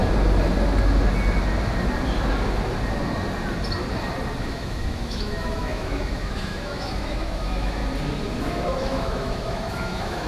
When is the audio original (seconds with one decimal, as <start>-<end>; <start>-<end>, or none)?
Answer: 0.0-4.4; 7.8-8.4